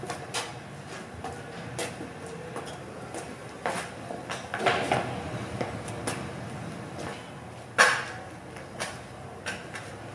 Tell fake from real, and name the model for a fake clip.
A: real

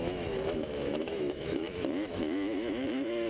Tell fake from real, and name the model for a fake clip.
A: fake, autoencoder, DAC-VAE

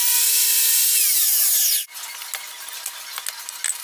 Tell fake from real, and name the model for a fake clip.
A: real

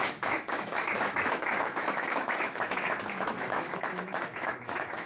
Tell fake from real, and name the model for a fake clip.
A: fake, autoencoder, DAC-VAE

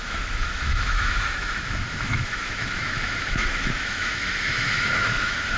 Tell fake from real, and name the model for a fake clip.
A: fake, autoencoder, DAC-VAE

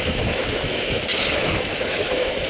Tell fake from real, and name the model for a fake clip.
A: fake, autoencoder, DAC-VAE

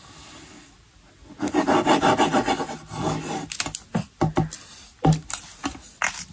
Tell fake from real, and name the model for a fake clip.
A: real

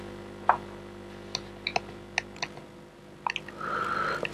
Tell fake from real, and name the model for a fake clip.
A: real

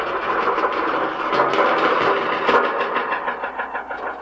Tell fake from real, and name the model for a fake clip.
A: real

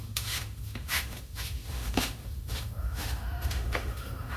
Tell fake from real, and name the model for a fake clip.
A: fake, autoencoder, DAC-VAE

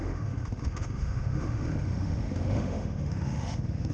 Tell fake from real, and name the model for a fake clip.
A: fake, autoencoder, DAC-VAE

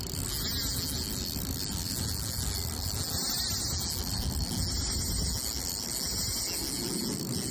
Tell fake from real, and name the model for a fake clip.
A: real